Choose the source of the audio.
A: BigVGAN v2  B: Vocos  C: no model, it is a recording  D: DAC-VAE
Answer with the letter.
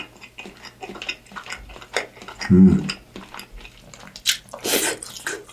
C